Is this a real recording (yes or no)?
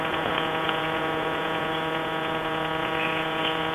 no